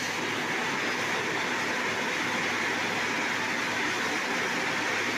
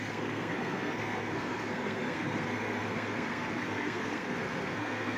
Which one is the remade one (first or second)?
second